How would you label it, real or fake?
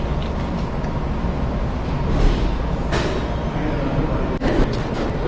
real